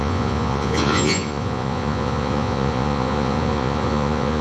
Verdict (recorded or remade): remade